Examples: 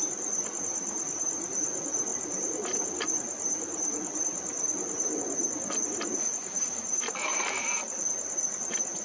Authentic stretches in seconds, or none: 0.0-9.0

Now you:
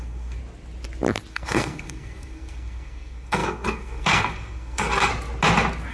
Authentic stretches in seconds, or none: 0.4-1.3; 5.1-5.9

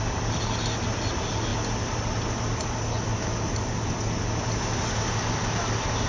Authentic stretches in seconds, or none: 0.0-6.1

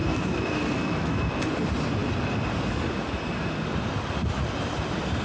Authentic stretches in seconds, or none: 1.4-5.2

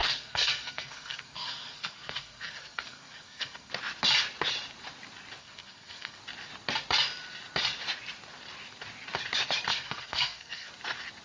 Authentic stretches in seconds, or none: 3.7-5.4; 6.2-9.7; 10.7-11.2

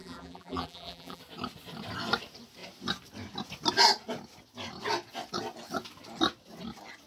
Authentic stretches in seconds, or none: 1.2-7.1

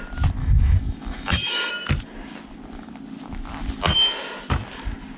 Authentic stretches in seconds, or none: 0.0-0.4; 1.7-5.2